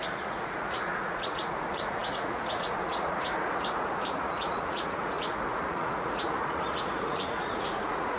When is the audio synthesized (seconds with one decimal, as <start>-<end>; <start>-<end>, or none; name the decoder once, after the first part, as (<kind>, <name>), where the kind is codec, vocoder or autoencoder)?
0.0-8.2 (vocoder, Vocos)